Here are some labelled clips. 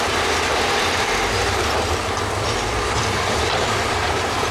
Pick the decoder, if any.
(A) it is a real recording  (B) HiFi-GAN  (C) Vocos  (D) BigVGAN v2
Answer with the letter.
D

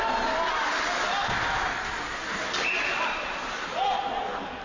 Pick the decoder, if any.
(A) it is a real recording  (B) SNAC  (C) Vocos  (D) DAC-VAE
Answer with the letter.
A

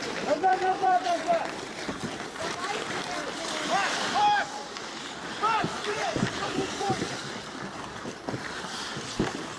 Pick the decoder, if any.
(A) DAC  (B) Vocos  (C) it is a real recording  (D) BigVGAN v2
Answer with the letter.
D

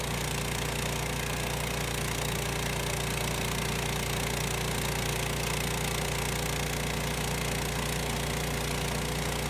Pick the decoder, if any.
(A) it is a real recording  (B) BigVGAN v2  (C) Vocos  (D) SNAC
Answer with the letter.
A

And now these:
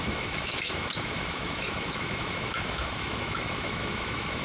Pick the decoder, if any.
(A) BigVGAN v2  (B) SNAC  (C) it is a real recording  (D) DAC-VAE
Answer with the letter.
D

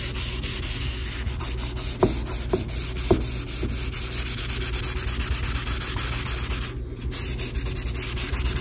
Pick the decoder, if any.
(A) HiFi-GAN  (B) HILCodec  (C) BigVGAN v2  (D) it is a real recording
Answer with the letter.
D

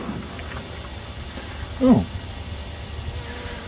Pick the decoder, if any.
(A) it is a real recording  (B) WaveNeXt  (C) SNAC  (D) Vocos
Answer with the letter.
A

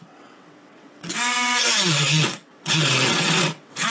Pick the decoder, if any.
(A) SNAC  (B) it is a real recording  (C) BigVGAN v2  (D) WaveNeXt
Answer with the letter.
D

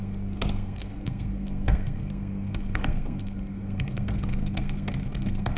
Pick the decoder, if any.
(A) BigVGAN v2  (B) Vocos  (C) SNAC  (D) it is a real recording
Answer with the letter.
C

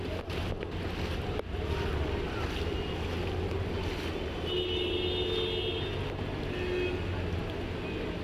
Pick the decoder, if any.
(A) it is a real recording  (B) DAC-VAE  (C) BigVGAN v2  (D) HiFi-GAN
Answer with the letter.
A